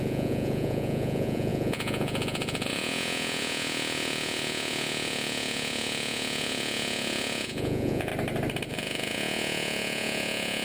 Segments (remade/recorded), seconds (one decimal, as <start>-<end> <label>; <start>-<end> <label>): 0.0-8.1 remade; 8.1-8.7 recorded; 8.7-10.6 remade